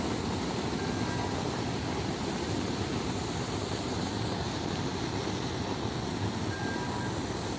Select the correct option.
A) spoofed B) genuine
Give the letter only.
B